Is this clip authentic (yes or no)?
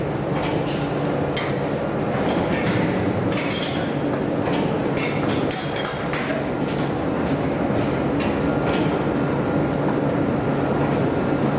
yes